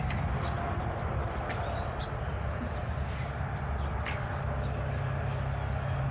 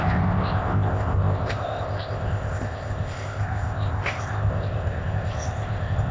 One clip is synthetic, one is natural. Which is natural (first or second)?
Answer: first